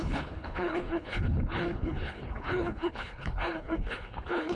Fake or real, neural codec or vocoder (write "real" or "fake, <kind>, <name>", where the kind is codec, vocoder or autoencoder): fake, codec, HILCodec